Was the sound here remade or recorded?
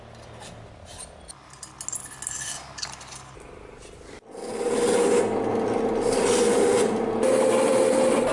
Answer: recorded